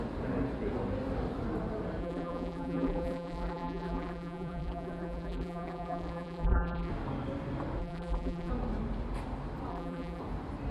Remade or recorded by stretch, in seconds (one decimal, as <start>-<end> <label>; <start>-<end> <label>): 0.0-2.0 recorded; 2.0-6.9 remade; 6.9-7.8 recorded; 7.8-8.5 remade; 8.5-9.7 recorded; 9.7-10.2 remade; 10.2-10.7 recorded